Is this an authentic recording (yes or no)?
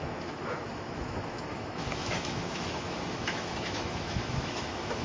no